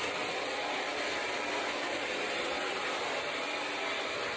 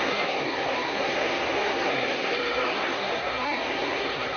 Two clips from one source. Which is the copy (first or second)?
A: second